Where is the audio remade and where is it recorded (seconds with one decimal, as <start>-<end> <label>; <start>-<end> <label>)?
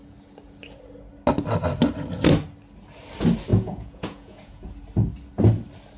0.0-3.5 recorded; 3.5-4.7 remade; 4.7-6.0 recorded